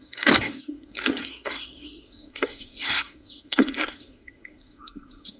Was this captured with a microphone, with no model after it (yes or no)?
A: no